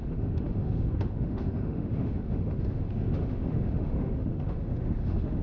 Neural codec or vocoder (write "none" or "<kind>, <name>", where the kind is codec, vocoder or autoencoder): autoencoder, DAC-VAE